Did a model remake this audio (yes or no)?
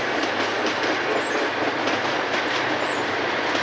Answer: no